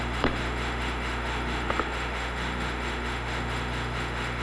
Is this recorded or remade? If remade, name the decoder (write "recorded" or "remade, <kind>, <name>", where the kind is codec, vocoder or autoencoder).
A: remade, autoencoder, DAC-VAE